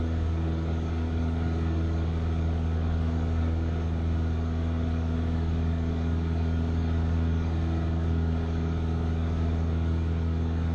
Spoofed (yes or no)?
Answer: yes